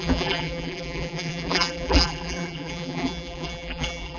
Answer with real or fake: fake